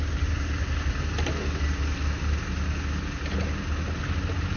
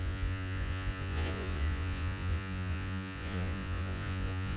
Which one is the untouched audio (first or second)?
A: first